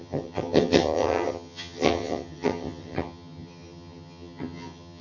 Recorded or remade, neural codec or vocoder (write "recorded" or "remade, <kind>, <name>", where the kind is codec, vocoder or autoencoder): remade, vocoder, HiFi-GAN